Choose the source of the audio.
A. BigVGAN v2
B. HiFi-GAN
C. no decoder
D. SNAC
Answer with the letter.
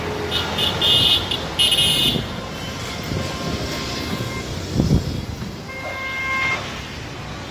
C